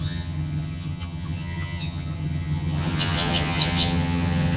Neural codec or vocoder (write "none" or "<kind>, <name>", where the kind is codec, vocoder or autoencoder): vocoder, HiFi-GAN